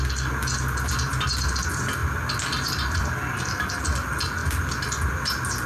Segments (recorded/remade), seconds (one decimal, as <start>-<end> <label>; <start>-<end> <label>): 0.0-5.7 recorded